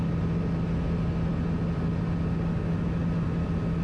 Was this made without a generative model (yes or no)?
yes